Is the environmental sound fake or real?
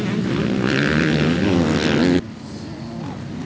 real